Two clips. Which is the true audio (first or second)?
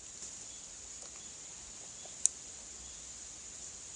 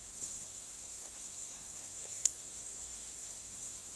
first